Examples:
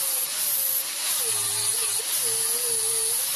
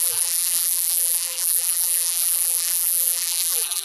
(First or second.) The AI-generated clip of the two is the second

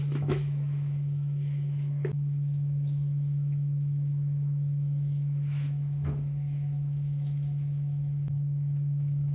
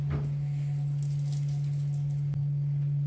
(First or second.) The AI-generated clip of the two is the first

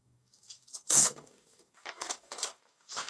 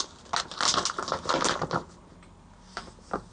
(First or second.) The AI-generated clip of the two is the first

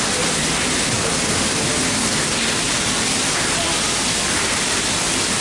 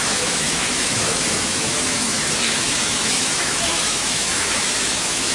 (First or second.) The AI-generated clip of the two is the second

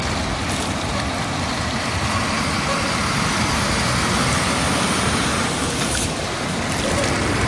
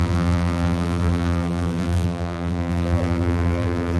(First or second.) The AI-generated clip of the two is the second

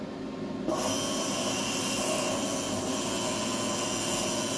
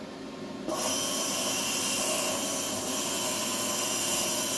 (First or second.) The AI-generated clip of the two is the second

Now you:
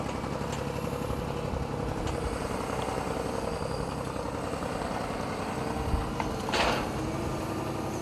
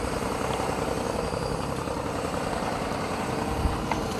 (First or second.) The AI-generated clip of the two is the second